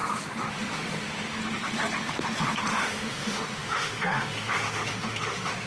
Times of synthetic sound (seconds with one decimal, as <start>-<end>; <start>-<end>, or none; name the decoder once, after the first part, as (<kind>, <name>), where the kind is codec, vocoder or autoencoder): 0.5-1.4 (autoencoder, DAC-VAE); 2.7-5.7